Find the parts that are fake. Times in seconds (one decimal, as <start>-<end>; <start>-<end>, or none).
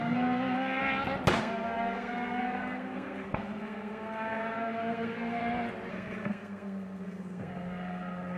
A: 0.0-0.8; 1.4-5.4; 5.9-8.4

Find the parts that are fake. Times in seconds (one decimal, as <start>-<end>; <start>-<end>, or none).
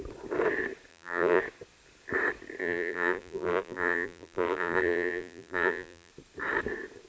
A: 0.9-1.4; 2.6-6.1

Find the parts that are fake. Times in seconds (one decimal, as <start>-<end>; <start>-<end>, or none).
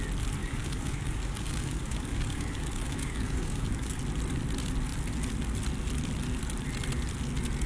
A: 0.4-4.0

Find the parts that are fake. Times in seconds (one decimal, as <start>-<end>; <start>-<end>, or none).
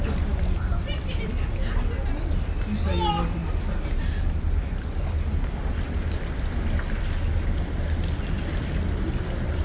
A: none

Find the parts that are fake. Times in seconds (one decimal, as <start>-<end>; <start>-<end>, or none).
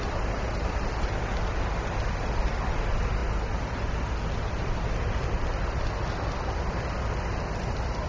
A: none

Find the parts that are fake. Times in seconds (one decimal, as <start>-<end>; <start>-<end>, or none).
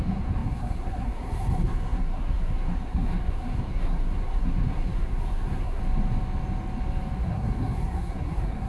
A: 0.0-5.8; 7.2-8.7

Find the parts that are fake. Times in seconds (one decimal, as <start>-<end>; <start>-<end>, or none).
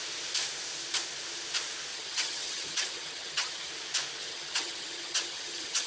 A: 1.9-3.7; 4.2-5.9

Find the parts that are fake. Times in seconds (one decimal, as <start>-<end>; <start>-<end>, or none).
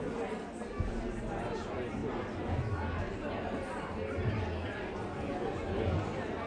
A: none